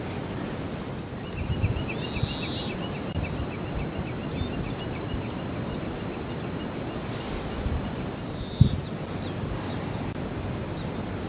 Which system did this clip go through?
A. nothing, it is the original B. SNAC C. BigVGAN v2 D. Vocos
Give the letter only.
A